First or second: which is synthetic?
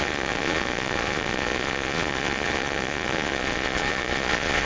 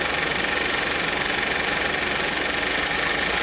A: first